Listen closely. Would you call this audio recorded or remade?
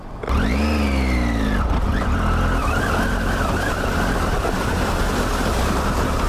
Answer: recorded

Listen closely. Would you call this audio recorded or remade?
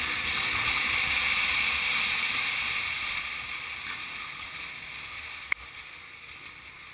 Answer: recorded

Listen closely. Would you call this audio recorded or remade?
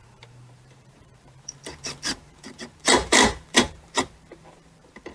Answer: remade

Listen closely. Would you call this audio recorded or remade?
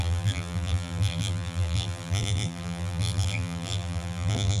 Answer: remade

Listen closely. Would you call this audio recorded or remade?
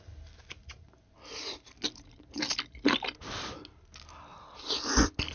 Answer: recorded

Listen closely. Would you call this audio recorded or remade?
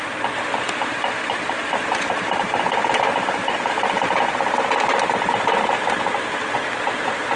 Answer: recorded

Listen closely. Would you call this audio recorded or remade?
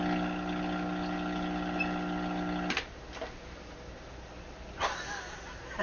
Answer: recorded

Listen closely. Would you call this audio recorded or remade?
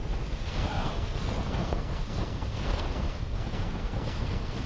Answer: remade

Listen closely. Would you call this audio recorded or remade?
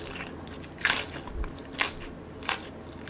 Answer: recorded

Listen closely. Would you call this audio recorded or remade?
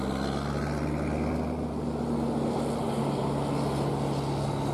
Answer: recorded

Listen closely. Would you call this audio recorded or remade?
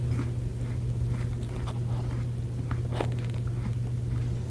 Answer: recorded